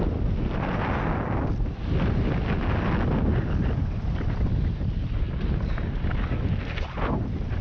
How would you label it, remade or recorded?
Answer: recorded